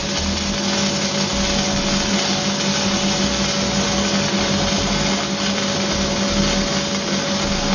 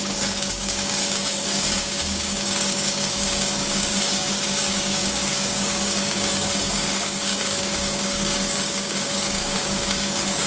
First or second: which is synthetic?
second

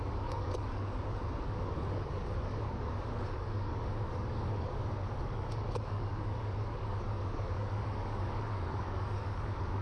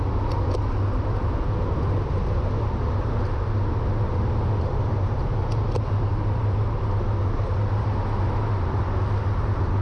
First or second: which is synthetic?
first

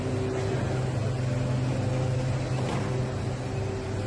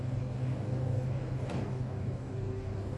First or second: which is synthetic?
second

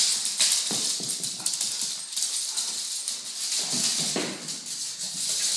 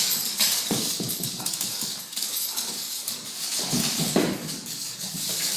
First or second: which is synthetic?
second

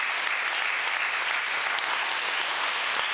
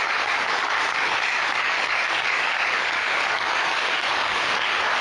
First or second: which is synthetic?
second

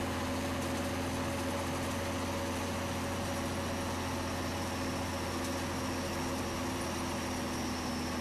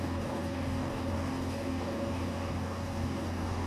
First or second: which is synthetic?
second